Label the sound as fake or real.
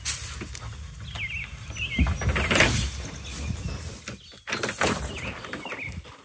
real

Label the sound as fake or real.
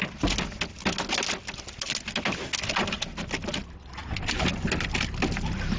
real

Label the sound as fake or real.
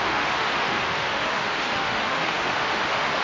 fake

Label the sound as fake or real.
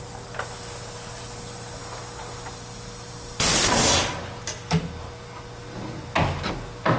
real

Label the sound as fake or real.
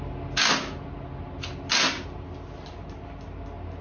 real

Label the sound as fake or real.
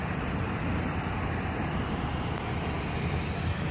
real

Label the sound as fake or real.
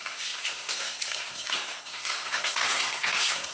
fake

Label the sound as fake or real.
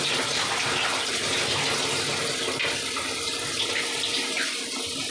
real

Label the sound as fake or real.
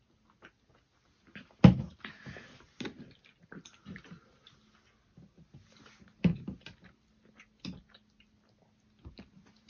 real